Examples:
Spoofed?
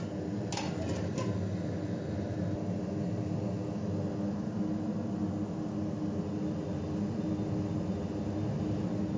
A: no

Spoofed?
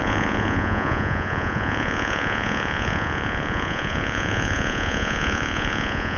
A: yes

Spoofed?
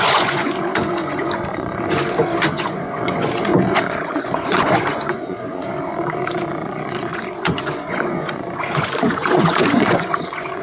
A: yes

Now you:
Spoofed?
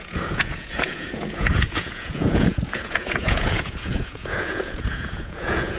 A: yes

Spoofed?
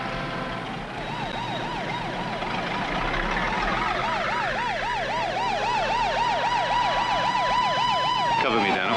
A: no